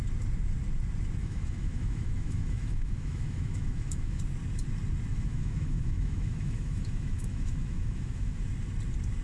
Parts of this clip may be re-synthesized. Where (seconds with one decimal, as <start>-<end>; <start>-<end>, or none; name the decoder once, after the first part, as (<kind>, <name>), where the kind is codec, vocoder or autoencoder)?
1.2-4.2 (autoencoder, DAC-VAE); 5.1-8.4